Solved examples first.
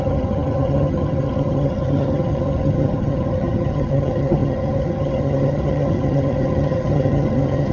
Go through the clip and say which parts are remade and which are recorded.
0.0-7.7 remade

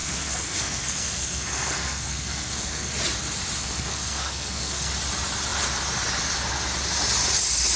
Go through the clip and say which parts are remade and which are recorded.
0.0-2.9 remade; 2.9-3.6 recorded; 3.6-4.9 remade; 4.9-7.8 recorded

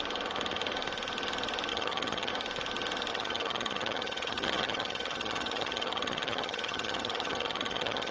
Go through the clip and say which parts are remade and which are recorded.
0.0-1.7 recorded; 1.7-2.3 remade; 2.3-3.1 recorded; 3.1-8.1 remade

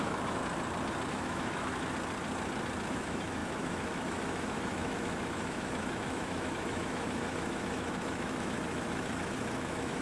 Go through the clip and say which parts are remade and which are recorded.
0.0-0.4 remade; 0.4-1.1 recorded; 1.1-1.7 remade; 1.7-2.9 recorded; 2.9-10.0 remade

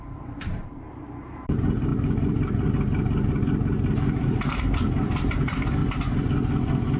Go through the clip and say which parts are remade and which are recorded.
0.0-5.8 remade; 5.8-7.0 recorded

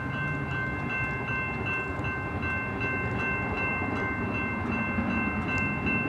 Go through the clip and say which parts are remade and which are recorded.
0.0-6.1 recorded

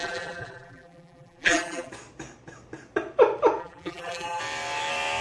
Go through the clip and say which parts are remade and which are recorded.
0.0-1.9 remade; 1.9-3.6 recorded; 3.6-4.4 remade; 4.4-5.2 recorded

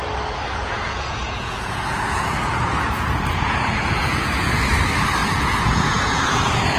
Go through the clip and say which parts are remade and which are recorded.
0.0-0.6 recorded; 0.6-4.7 remade; 4.7-5.2 recorded; 5.2-6.8 remade